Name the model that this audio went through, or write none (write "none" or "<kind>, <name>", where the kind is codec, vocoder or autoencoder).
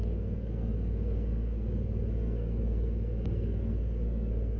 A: codec, SNAC